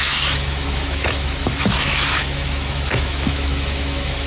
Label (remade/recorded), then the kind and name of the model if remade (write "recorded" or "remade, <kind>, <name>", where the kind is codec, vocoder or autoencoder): remade, autoencoder, DAC-VAE